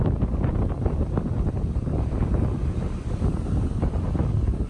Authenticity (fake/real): real